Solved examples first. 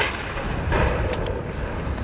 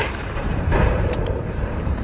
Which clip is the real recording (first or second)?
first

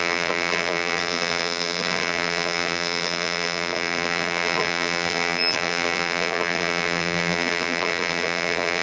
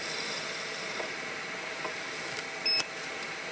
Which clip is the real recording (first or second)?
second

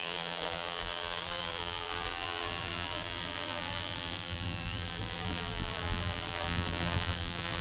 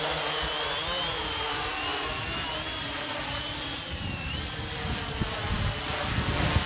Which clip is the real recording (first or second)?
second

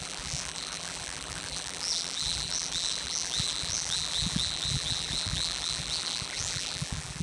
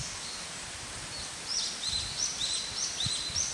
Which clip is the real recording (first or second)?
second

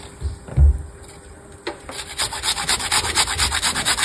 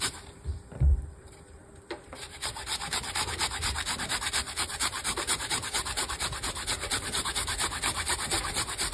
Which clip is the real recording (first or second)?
first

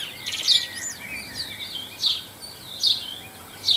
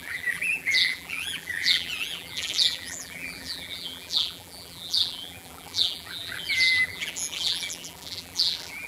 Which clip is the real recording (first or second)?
first